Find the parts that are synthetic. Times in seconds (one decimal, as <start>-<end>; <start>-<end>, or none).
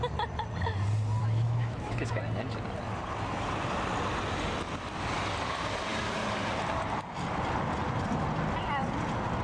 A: 1.2-2.2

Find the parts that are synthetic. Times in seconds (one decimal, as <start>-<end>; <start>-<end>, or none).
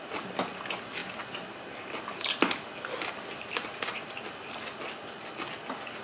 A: none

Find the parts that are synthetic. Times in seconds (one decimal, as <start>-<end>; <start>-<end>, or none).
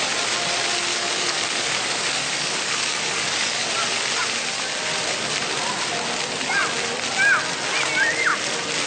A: 0.9-3.7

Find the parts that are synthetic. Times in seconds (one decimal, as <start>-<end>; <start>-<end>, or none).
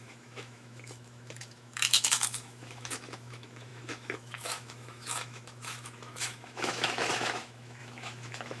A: 0.0-8.6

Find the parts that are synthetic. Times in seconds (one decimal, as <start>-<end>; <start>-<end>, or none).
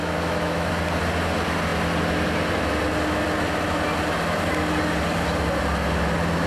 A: 0.0-0.7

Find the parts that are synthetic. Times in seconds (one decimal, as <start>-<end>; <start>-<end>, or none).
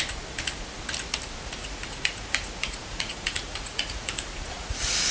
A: 1.6-5.1